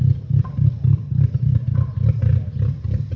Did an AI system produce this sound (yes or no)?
no